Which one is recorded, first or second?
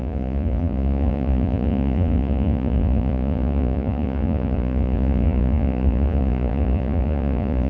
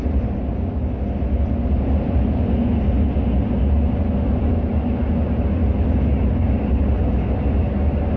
second